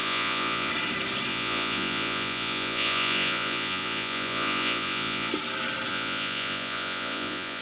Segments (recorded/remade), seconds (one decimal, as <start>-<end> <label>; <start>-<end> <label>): 0.0-0.7 remade; 0.7-1.3 recorded; 1.3-5.3 remade; 5.3-5.9 recorded; 5.9-7.6 remade